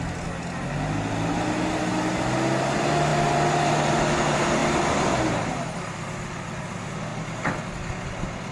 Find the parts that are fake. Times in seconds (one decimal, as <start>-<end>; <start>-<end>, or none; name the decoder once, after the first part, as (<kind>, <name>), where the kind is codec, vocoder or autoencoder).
none

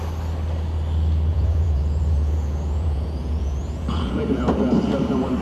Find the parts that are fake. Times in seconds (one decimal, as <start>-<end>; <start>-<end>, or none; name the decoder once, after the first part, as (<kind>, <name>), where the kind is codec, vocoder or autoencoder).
1.3-4.5 (vocoder, Vocos)